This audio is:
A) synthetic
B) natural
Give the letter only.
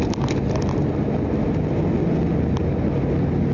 B